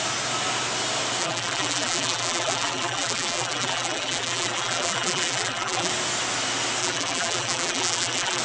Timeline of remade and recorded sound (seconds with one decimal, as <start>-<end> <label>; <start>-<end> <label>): 0.0-1.2 recorded; 1.2-5.9 remade; 5.9-6.8 recorded; 6.8-8.4 remade